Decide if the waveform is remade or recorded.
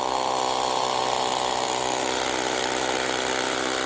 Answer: recorded